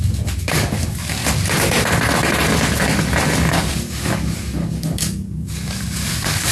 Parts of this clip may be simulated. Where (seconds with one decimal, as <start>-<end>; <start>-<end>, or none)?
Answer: 0.0-1.2; 3.5-6.5